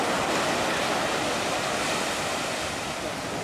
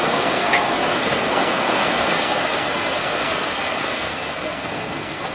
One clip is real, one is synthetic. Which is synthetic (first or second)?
second